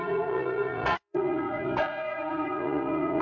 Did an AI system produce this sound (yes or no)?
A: yes